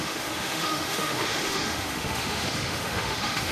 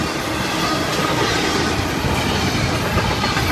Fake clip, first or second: first